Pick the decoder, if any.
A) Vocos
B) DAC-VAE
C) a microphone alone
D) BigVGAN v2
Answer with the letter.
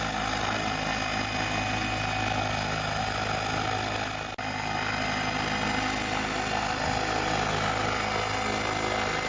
C